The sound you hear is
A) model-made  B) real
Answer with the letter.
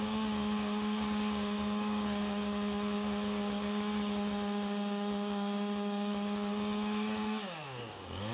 A